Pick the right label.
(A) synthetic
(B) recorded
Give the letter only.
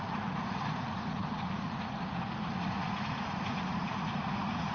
A